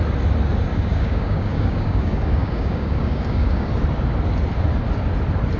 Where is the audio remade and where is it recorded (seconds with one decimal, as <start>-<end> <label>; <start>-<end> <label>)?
0.0-0.7 recorded; 0.7-3.7 remade; 3.7-5.6 recorded